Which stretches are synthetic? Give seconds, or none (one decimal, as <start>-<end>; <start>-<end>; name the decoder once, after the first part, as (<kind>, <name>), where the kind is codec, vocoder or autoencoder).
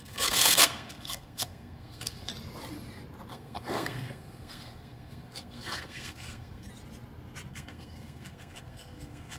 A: 0.0-2.3 (codec, SNAC); 3.3-6.7; 7.5-9.4